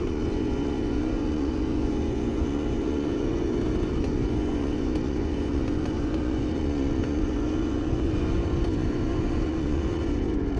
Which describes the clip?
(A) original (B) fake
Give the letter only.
B